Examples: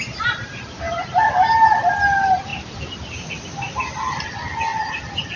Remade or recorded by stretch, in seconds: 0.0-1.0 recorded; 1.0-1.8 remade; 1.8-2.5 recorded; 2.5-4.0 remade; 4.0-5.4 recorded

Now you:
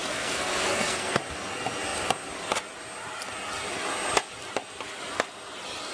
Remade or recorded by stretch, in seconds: 0.0-1.2 remade; 1.2-5.9 recorded

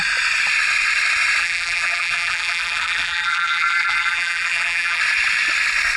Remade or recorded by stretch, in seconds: 0.0-1.4 recorded; 1.4-5.0 remade; 5.0-6.0 recorded

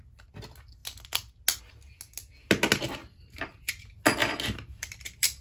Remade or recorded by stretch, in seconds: 0.0-3.0 recorded; 3.0-3.7 remade; 3.7-4.2 recorded; 4.2-5.4 remade

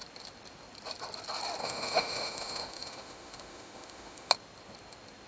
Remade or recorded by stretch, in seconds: 0.0-1.6 recorded; 1.6-4.3 remade; 4.3-5.3 recorded

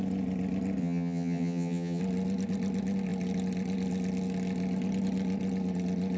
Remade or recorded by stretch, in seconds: 0.0-0.8 recorded; 0.8-2.0 remade; 2.0-6.2 recorded

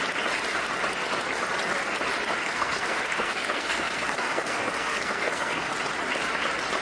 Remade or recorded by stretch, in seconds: 0.0-2.4 recorded; 2.4-5.7 remade; 5.7-6.8 recorded